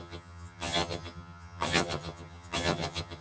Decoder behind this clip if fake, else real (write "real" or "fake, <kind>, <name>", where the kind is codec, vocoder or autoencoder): fake, vocoder, HiFi-GAN